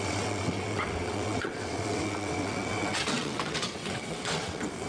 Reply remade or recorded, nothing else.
remade